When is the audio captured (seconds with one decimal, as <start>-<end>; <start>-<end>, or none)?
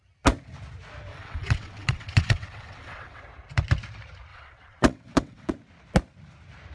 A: 0.0-1.1; 3.2-4.3; 5.5-6.7